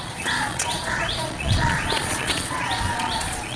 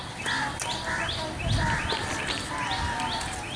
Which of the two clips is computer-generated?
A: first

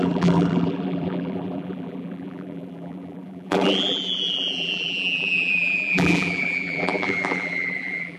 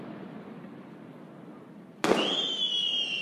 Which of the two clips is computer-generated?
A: first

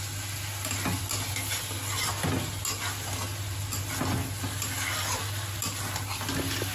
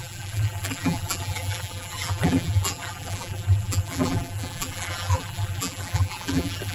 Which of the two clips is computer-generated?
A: second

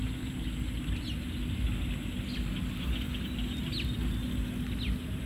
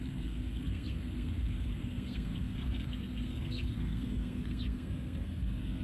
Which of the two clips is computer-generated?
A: second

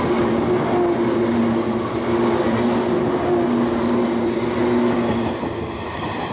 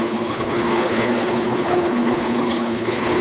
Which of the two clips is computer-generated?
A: second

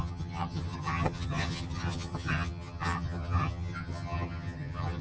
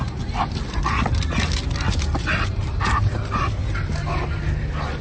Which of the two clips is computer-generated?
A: first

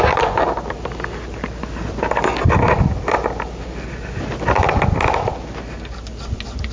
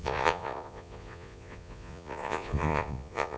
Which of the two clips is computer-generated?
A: second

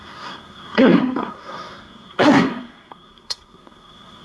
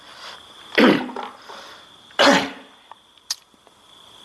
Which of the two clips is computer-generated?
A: first